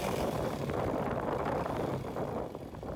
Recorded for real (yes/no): yes